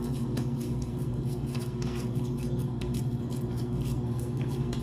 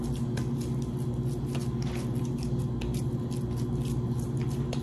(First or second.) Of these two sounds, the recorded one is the second